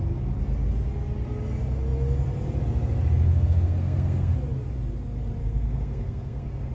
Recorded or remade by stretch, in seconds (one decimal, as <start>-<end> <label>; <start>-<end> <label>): 0.0-3.3 recorded; 3.3-4.3 remade; 4.3-5.4 recorded; 5.4-6.7 remade